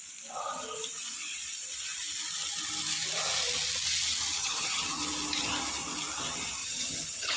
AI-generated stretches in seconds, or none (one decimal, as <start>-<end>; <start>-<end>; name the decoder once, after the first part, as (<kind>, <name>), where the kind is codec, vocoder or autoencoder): 4.4-5.0 (vocoder, HiFi-GAN); 6.6-7.4